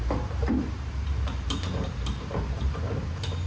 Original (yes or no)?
no